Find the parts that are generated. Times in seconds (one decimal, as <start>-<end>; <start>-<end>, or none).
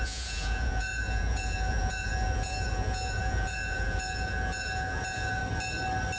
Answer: 0.0-5.4